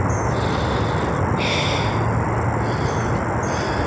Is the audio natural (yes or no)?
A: yes